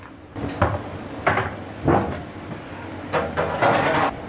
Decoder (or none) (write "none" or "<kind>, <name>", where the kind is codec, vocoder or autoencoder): none